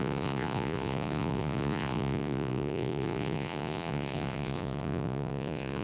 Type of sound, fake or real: fake